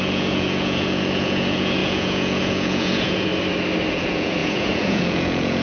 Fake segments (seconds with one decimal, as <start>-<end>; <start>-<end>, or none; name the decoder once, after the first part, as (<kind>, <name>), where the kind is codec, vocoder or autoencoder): 0.0-3.3 (vocoder, Vocos); 3.9-5.6